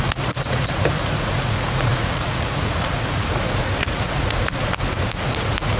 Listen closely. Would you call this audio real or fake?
fake